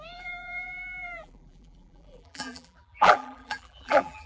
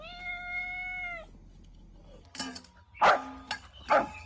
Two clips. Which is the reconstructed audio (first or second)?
first